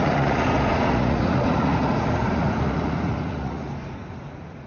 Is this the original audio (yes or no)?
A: no